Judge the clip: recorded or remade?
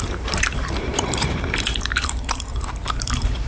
remade